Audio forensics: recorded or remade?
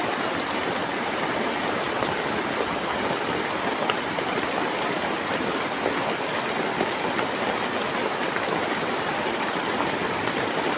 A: recorded